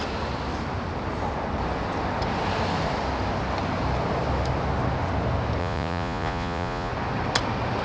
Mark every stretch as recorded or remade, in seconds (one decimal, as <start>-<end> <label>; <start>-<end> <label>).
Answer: 0.0-5.6 recorded; 5.6-6.9 remade; 6.9-7.8 recorded